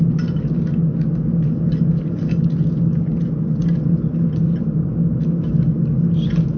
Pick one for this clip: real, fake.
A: real